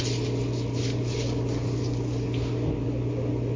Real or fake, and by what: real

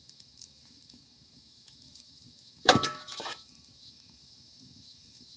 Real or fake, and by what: fake, autoencoder, DAC-VAE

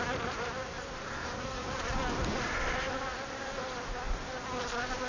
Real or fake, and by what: real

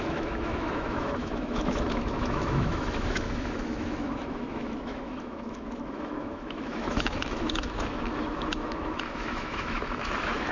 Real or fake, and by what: fake, autoencoder, DAC-VAE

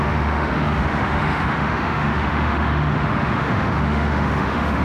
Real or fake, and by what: fake, autoencoder, DAC-VAE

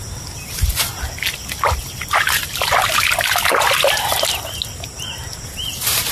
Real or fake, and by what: real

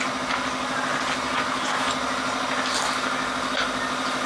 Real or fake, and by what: real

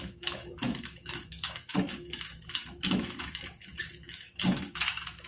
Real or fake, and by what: fake, autoencoder, DAC-VAE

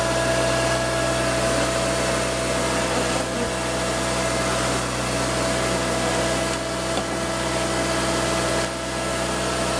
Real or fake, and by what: real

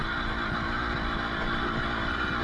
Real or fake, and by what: real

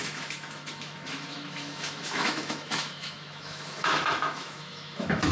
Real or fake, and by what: fake, autoencoder, DAC-VAE